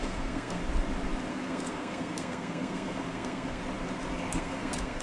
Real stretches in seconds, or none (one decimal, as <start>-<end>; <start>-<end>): 0.6-1.3; 3.6-4.3

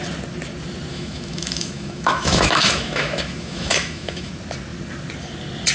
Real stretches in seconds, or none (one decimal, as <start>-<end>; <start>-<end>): 0.0-0.9; 4.3-5.7

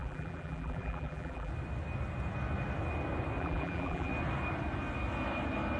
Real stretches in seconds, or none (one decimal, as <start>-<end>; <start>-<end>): 1.5-3.4; 4.1-5.8

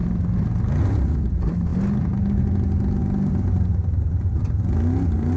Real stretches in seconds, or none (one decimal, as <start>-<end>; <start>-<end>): 0.0-5.4

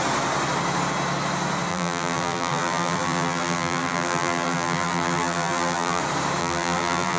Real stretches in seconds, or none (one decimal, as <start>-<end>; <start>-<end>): 0.0-1.7; 6.0-6.4

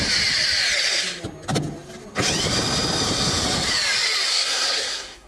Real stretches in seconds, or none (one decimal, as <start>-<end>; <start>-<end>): 0.0-4.3